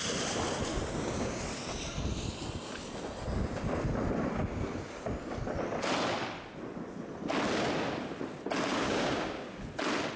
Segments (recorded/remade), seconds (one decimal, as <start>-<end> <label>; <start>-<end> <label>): 0.0-0.7 recorded; 0.7-1.4 remade; 1.4-8.7 recorded; 8.7-9.6 remade; 9.6-10.2 recorded